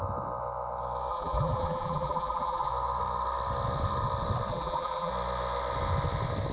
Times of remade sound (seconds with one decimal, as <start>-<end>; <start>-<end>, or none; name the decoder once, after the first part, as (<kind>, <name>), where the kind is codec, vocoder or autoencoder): 1.1-2.7 (vocoder, BigVGAN v2); 4.5-5.1